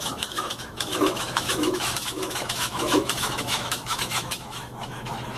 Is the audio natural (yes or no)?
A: no